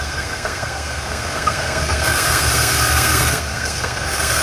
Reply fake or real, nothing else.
fake